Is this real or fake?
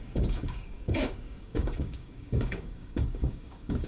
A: fake